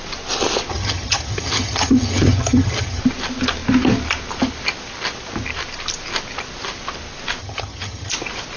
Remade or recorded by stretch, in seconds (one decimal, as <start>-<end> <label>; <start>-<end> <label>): 0.0-0.7 recorded; 0.7-3.0 remade; 3.0-7.4 recorded; 7.4-8.1 remade; 8.1-8.6 recorded